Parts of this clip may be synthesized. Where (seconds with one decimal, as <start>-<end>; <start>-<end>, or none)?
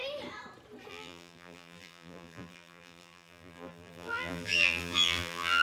0.9-5.6